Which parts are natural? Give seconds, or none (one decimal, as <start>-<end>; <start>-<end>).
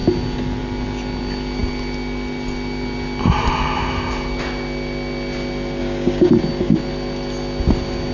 0.0-5.8; 6.3-8.1